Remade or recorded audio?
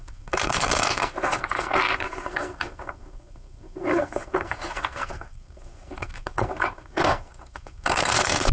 remade